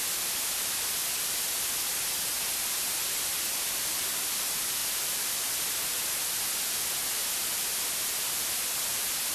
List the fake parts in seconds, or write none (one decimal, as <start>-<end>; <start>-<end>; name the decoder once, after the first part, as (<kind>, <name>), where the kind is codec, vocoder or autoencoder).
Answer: none